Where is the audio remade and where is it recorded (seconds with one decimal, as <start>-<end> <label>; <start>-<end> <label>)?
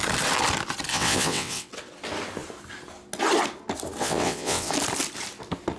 0.0-0.9 recorded; 0.9-1.7 remade; 1.7-4.0 recorded; 4.0-4.7 remade; 4.7-5.8 recorded